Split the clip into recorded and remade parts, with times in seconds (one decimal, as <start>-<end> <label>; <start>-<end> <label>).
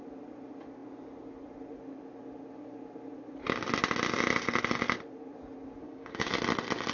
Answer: 0.0-5.8 recorded; 5.8-6.3 remade; 6.3-6.9 recorded